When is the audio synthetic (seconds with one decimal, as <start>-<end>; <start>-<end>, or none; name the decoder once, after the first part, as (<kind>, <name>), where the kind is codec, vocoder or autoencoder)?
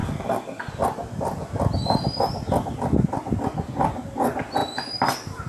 none